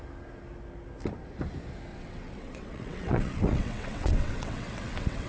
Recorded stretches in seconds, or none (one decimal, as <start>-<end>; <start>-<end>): 0.0-1.9